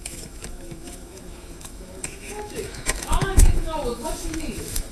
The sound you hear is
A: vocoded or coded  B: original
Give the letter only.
A